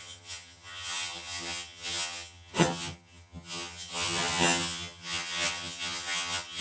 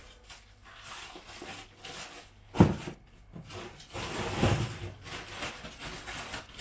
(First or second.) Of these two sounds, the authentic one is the second